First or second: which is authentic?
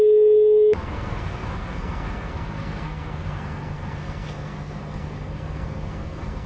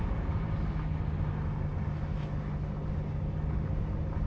second